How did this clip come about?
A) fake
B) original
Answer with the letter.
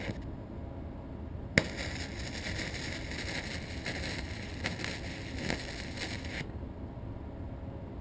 B